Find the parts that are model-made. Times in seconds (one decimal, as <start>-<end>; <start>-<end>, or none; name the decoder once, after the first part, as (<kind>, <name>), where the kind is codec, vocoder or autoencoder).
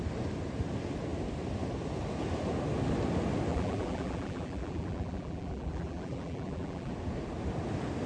3.5-6.9 (vocoder, BigVGAN v2)